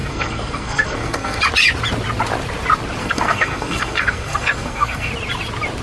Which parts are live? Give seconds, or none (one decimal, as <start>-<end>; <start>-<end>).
1.4-3.0; 5.1-5.8